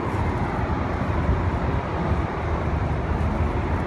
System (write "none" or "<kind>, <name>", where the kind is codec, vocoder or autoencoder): none